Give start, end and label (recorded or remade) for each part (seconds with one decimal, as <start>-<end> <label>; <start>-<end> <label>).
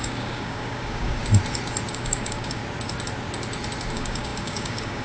0.0-1.2 remade; 1.2-1.9 recorded; 1.9-2.6 remade; 2.6-3.9 recorded; 3.9-5.0 remade